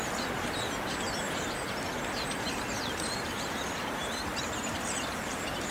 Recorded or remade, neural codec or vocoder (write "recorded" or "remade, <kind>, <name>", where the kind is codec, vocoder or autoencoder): remade, vocoder, BigVGAN v2